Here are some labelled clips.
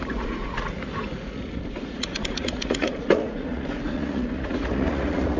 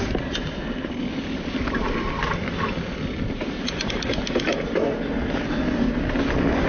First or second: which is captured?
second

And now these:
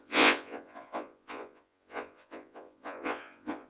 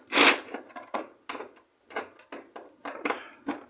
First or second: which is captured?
second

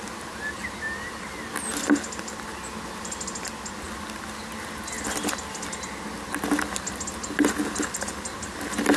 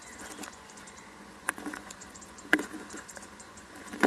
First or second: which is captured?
first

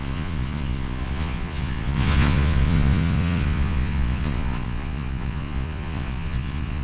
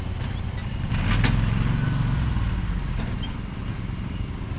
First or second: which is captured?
second